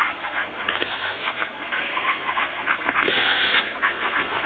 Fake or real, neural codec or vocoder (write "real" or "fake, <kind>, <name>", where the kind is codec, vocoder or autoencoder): fake, codec, SNAC